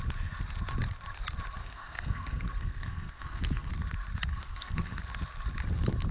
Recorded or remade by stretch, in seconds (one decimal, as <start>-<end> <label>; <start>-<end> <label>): 0.0-1.6 recorded; 1.6-3.7 remade; 3.7-4.3 recorded; 4.3-5.0 remade; 5.0-6.1 recorded